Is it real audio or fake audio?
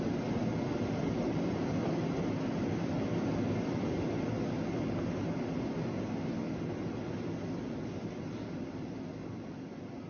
real